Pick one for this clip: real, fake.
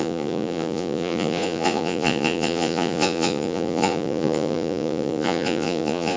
fake